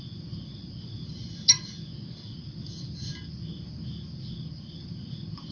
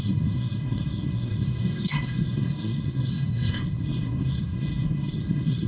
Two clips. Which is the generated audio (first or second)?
second